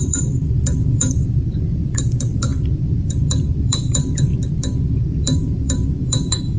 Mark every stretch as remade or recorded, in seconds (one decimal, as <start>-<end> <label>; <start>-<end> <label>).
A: 0.0-4.3 remade; 4.3-5.1 recorded; 5.1-6.6 remade